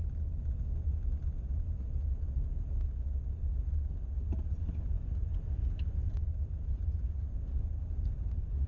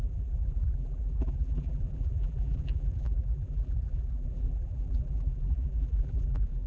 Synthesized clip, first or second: second